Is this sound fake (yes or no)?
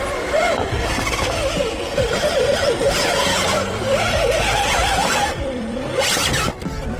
yes